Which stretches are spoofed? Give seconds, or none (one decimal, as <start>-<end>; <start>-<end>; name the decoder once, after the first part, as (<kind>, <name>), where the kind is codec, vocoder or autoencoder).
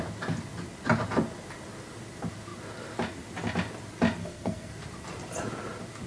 4.2-4.7 (codec, SNAC)